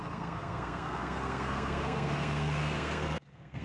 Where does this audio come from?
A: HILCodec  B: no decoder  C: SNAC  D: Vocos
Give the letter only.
C